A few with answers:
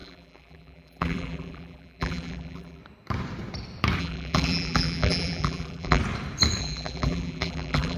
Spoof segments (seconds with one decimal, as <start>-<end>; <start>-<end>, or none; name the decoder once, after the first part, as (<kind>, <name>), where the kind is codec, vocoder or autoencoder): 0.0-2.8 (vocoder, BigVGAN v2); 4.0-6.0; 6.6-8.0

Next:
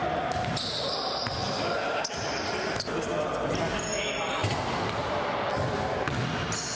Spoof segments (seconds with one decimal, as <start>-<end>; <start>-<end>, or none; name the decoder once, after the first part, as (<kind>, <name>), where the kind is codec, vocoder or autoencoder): 0.0-0.5 (vocoder, BigVGAN v2); 1.4-2.0; 4.4-5.3

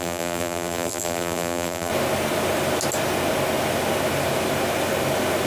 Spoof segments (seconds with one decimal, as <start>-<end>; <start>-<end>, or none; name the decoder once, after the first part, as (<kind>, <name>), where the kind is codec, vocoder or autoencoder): 0.0-1.9 (vocoder, BigVGAN v2)